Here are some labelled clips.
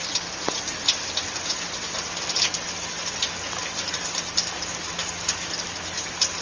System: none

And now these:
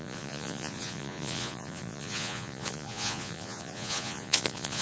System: vocoder, Vocos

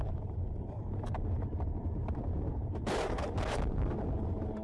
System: vocoder, BigVGAN v2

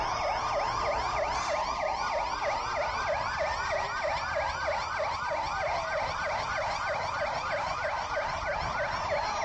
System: none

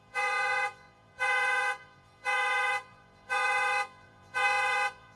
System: vocoder, Vocos